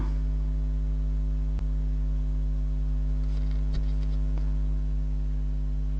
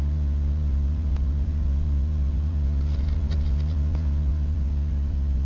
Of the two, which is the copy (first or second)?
second